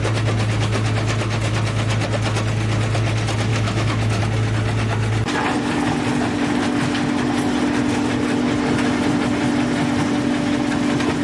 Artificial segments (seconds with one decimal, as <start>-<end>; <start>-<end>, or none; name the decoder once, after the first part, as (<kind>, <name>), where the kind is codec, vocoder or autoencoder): 3.5-4.2 (autoencoder, DAC-VAE)